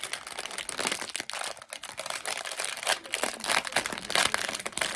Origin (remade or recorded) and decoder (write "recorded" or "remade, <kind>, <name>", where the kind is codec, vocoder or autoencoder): recorded